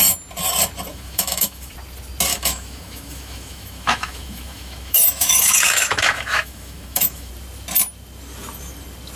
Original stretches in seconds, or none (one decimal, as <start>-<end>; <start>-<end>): 0.0-0.9; 1.7-2.3; 7.3-9.2